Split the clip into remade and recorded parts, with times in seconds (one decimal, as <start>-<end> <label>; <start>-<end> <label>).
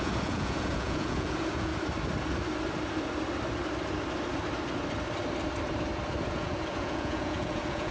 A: 0.0-1.7 remade; 1.7-6.3 recorded; 6.3-7.9 remade